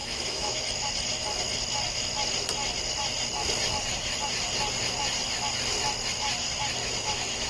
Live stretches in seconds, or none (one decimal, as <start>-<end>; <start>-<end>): 0.6-6.8